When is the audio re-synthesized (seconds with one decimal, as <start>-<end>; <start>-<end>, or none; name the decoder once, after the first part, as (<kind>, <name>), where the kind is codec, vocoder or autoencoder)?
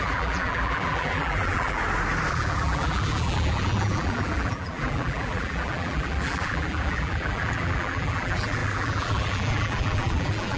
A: 0.0-1.8 (vocoder, BigVGAN v2); 2.3-10.6